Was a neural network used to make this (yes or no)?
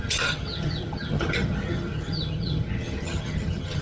yes